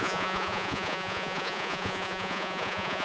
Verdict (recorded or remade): remade